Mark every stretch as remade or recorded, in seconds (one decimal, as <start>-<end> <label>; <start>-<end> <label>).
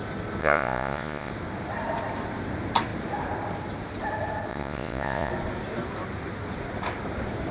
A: 0.0-0.4 recorded; 0.4-1.3 remade; 1.3-4.5 recorded; 4.5-5.3 remade; 5.3-7.5 recorded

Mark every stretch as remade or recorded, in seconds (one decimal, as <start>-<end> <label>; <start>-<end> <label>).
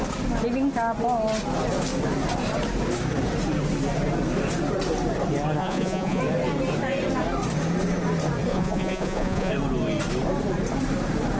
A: 0.0-5.6 recorded; 5.6-6.2 remade; 6.2-8.5 recorded; 8.5-9.5 remade; 9.5-11.4 recorded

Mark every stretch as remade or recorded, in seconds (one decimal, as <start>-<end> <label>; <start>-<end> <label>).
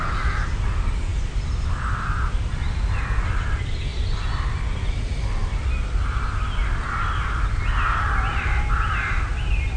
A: 0.0-9.8 recorded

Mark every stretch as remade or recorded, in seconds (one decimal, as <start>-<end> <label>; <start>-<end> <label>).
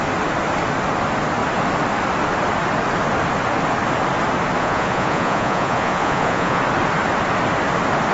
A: 0.0-4.6 recorded; 4.6-6.6 remade; 6.6-8.1 recorded